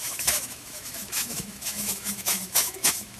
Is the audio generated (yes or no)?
yes